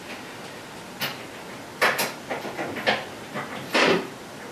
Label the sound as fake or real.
real